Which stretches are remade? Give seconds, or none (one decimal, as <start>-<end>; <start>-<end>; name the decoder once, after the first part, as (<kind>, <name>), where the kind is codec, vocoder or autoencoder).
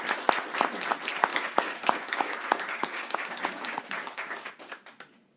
1.3-4.5 (codec, DAC)